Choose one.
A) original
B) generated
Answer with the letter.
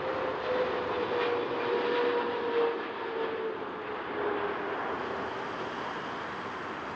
A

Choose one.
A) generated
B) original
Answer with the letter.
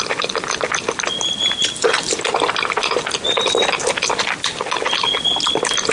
B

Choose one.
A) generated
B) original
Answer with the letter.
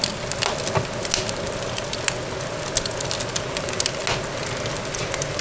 B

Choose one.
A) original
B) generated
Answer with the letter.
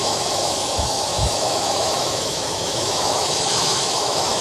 B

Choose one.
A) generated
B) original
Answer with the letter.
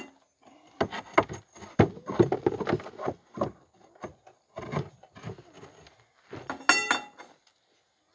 B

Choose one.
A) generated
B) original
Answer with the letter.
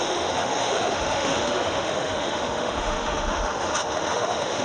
A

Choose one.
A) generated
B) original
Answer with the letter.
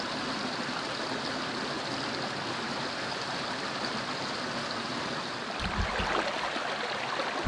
B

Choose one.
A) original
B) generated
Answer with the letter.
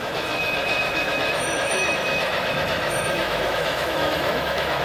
B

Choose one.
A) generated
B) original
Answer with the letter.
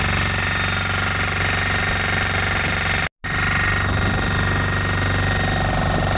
B